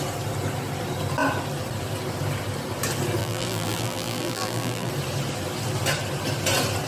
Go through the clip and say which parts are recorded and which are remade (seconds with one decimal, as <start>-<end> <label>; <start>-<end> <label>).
0.0-3.2 recorded; 3.2-4.9 remade; 4.9-6.9 recorded